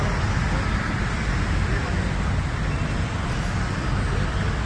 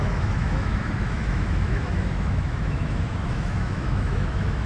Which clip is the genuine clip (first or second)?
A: first